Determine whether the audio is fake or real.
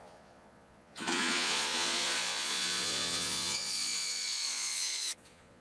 fake